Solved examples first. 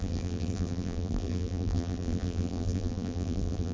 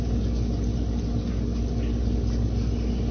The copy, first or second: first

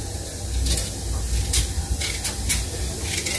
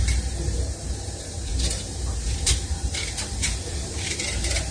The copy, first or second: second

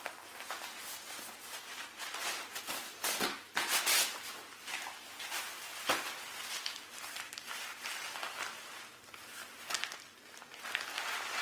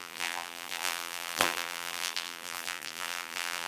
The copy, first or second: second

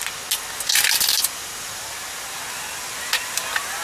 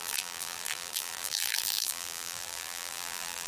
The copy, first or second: second